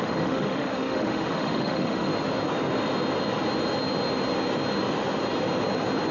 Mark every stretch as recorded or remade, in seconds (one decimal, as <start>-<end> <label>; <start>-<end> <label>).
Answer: 0.0-2.1 remade; 2.1-6.1 recorded